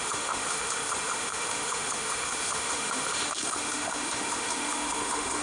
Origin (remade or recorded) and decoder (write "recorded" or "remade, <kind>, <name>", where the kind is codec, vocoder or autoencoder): remade, autoencoder, DAC-VAE